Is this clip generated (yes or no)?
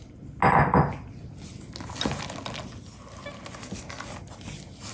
no